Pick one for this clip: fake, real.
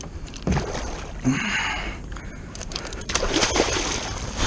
fake